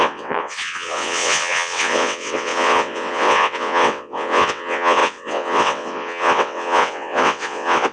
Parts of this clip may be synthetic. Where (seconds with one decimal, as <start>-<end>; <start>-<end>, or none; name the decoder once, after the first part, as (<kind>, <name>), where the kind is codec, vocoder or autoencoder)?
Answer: 0.0-7.9 (vocoder, WaveNeXt)